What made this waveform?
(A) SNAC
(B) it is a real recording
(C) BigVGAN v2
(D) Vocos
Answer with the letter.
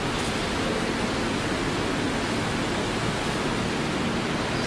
B